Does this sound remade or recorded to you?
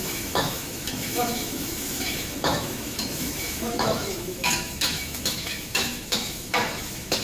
remade